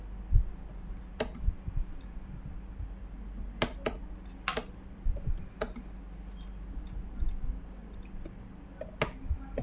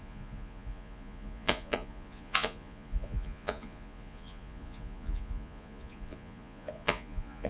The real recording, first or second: first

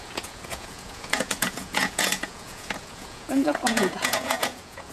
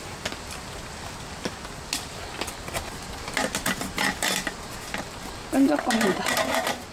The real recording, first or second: second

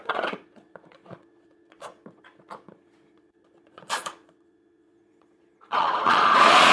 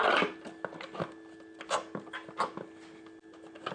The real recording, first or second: second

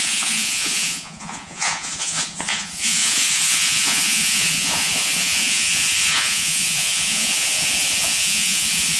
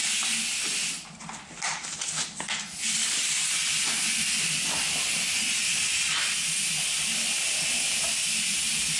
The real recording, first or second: second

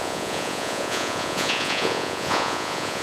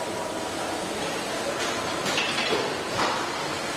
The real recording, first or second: second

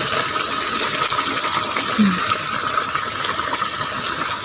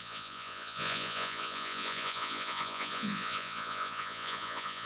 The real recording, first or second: first